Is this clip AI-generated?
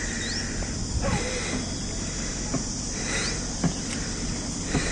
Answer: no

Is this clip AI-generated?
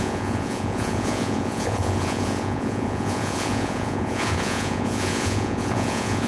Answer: yes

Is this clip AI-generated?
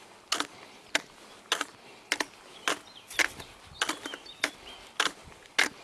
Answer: no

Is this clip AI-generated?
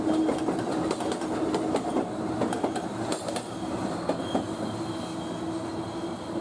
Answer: no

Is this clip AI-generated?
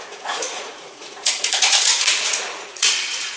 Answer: yes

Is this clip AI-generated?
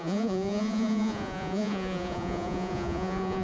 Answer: yes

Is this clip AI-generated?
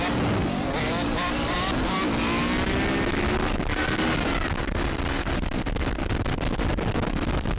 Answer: no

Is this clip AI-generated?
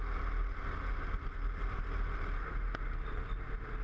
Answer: no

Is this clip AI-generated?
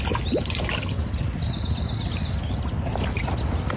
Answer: no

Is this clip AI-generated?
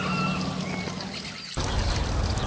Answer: no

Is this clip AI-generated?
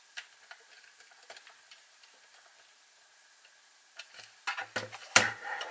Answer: no